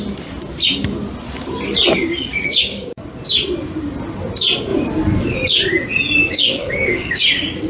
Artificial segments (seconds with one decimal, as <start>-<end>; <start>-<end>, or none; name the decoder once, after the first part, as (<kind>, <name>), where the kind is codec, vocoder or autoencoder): 2.3-3.1 (codec, DAC); 6.2-7.2